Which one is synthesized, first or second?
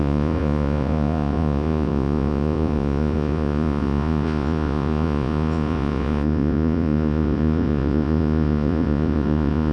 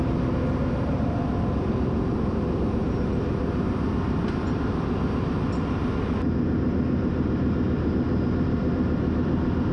first